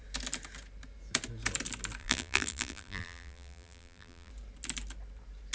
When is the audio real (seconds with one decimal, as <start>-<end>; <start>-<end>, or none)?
0.0-2.0; 4.3-5.5